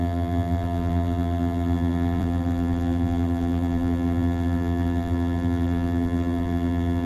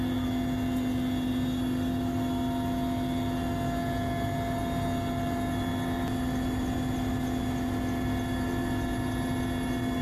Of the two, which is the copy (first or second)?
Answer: first